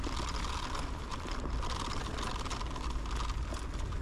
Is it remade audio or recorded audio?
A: recorded